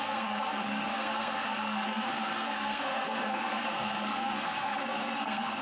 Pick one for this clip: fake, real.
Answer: fake